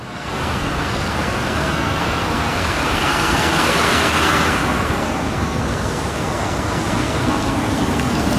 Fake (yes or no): yes